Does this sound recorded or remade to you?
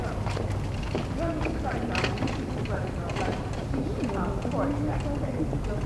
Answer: recorded